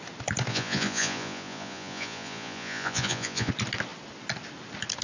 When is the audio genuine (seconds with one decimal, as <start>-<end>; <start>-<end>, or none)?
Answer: 0.0-0.5; 3.5-5.0